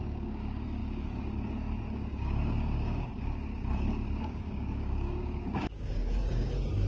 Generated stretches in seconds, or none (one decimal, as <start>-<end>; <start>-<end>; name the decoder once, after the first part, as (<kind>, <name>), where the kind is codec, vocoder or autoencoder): 0.0-6.9 (codec, DAC)